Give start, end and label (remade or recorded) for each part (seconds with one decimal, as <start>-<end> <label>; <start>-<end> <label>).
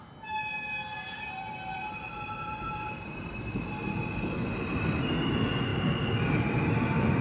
0.0-0.9 recorded; 0.9-3.7 remade; 3.7-7.2 recorded